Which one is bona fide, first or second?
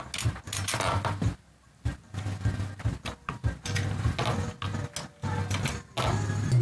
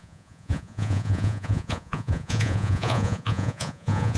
first